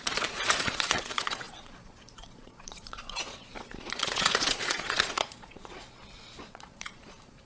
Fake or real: fake